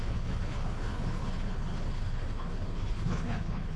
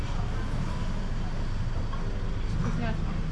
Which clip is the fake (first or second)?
first